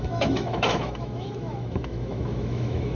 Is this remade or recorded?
remade